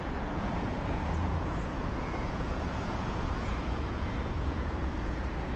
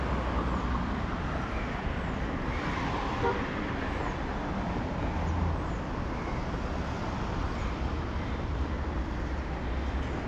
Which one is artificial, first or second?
first